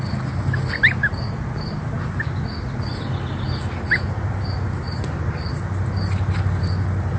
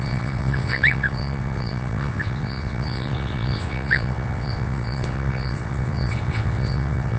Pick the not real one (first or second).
second